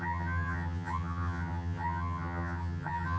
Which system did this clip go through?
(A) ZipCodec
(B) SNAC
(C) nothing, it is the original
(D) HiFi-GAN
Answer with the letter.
D